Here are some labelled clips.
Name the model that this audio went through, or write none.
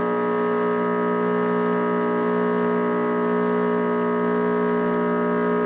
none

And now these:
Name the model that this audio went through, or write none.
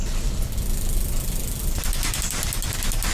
none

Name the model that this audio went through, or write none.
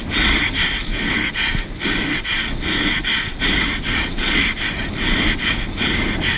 none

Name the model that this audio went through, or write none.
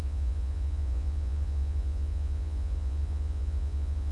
vocoder, Vocos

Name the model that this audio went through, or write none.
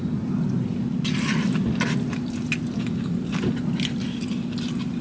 none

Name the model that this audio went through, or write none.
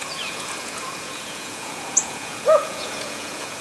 vocoder, Vocos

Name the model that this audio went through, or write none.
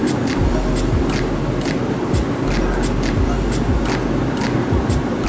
none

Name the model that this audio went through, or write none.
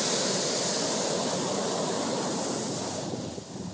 none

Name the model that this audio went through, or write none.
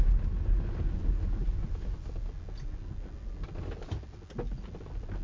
none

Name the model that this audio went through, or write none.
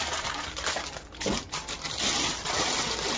none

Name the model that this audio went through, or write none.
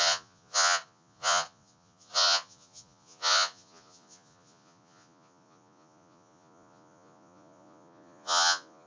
vocoder, Vocos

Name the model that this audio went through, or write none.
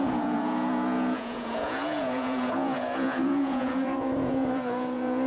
vocoder, Vocos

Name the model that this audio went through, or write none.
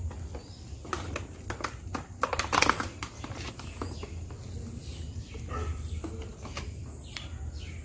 none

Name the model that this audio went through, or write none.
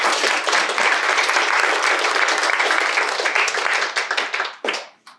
none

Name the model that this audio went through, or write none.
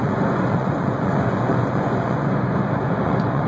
vocoder, Vocos